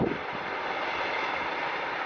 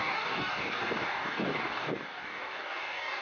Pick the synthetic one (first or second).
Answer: second